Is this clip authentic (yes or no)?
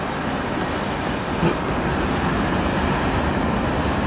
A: yes